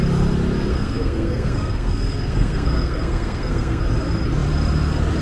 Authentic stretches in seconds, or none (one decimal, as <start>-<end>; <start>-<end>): 0.0-0.7; 3.8-5.2